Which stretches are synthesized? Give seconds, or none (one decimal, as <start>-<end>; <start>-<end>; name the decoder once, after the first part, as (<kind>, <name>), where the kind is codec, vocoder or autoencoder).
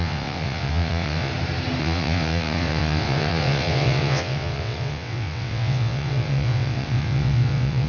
0.0-1.3 (vocoder, WaveNeXt); 1.8-7.9